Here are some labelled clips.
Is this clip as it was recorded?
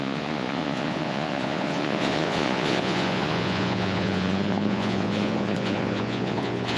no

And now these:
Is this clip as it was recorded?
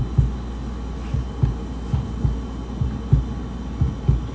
yes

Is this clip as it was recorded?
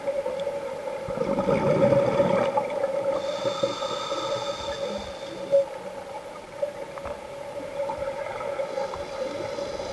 yes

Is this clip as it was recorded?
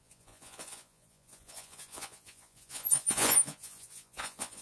no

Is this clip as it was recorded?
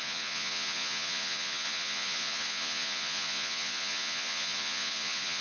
no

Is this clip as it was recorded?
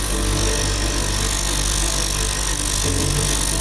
yes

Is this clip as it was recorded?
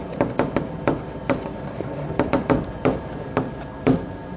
yes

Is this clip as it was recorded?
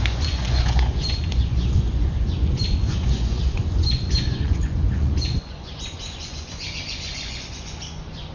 no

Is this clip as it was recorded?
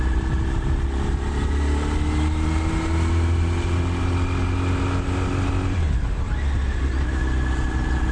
yes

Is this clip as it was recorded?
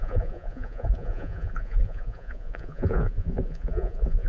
no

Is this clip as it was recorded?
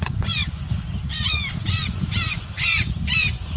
no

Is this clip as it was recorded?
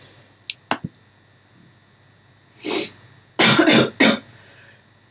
yes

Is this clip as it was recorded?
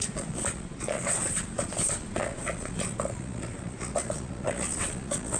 no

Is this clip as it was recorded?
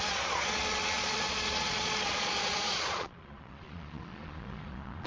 no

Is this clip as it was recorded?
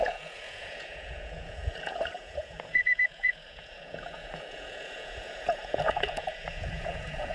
no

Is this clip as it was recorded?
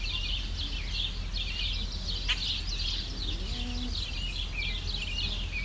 yes